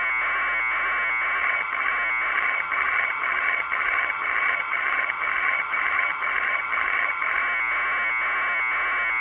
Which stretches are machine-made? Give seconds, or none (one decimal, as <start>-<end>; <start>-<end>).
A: 1.4-1.9; 2.3-7.4